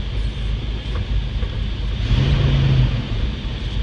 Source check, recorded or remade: recorded